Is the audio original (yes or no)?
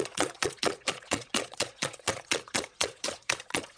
no